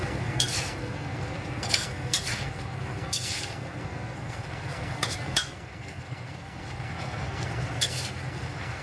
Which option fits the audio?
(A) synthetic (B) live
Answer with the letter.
A